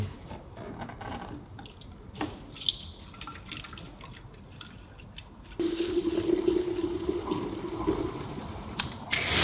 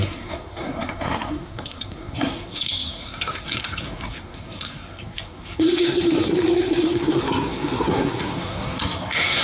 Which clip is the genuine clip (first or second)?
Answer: first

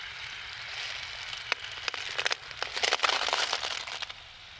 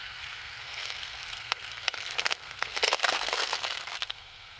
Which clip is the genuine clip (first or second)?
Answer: first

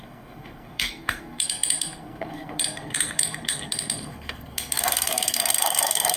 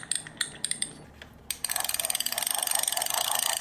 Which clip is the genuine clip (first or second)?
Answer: second